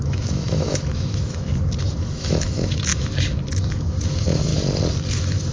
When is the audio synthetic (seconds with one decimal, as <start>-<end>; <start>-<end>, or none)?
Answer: 0.0-1.5; 2.0-2.9; 3.7-4.5; 5.1-5.5